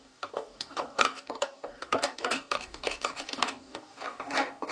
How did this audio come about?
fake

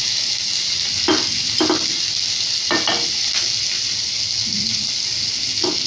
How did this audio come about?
real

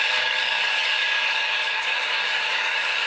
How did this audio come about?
fake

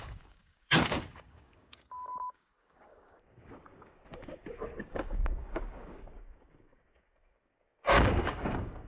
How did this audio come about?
fake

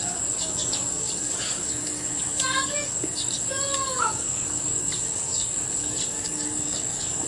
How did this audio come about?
fake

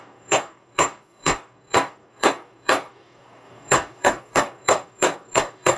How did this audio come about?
fake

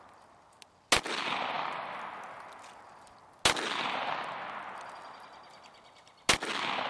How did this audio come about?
real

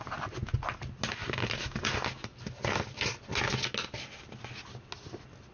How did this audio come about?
real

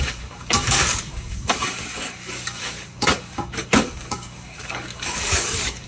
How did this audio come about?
fake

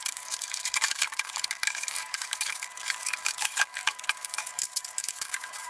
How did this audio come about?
fake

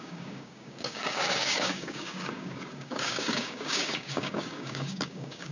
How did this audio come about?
fake